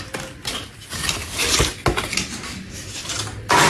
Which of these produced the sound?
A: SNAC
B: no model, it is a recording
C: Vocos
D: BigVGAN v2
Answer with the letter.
B